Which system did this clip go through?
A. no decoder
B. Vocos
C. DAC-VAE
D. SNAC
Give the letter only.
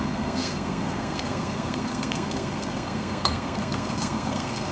D